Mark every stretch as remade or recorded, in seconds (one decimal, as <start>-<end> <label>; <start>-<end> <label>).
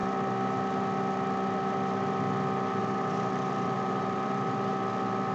0.0-2.8 recorded; 2.8-4.7 remade; 4.7-5.3 recorded